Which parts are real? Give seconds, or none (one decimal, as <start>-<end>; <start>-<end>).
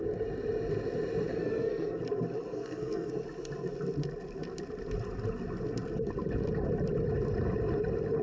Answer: 0.0-1.3; 2.0-2.5; 3.1-8.2